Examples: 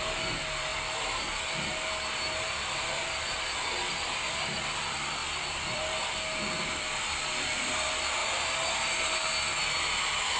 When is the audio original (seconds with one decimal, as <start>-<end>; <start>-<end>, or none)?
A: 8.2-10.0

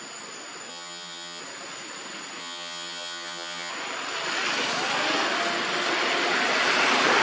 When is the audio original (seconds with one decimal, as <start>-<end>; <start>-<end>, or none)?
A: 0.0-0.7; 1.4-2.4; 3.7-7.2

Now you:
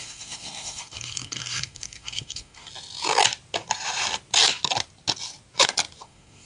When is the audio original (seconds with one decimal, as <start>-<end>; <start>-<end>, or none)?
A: 2.7-6.0

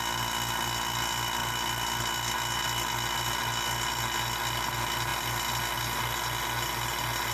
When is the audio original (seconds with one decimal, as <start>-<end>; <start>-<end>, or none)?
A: 0.0-7.3

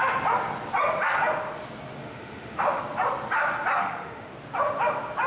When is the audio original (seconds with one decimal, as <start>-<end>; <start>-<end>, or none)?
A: 0.0-2.0; 2.8-3.8; 4.3-5.3

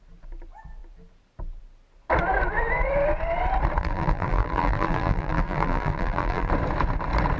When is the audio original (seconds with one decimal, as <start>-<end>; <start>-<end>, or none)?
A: 0.0-3.8; 6.5-7.4